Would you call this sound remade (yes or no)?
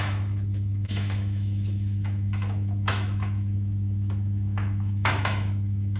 yes